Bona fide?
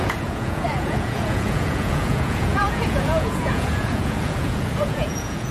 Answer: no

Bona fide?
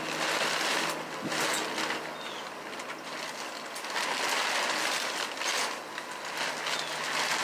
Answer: yes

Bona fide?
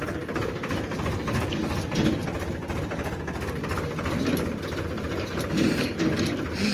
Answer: yes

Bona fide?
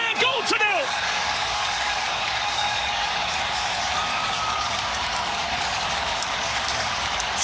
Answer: no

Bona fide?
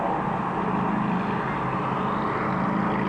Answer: yes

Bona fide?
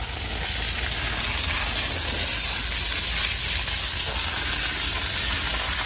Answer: yes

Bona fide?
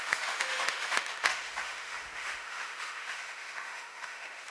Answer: no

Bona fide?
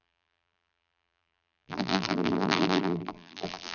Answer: no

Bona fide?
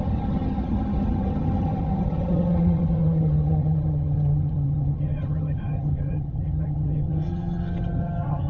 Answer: no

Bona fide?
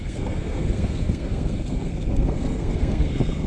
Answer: no